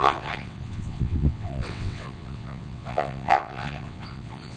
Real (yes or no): no